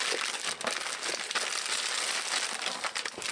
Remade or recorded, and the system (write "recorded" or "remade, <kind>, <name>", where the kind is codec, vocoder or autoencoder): recorded